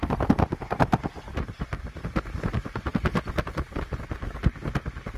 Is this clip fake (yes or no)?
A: no